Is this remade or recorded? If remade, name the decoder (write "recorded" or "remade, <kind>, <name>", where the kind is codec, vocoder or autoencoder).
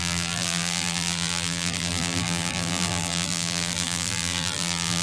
remade, vocoder, BigVGAN v2